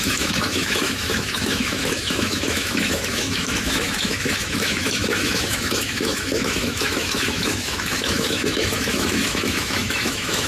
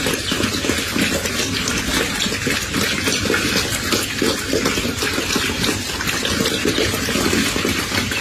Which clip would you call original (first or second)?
second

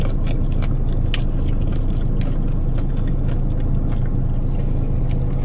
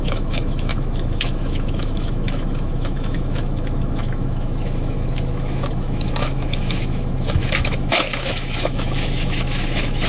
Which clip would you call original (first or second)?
first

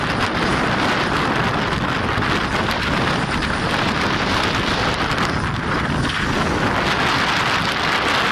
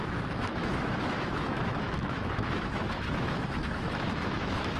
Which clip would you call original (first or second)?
first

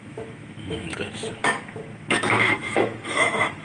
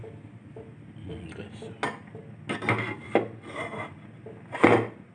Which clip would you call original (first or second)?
second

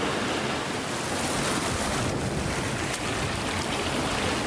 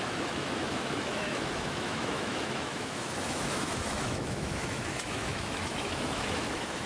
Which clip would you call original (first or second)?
first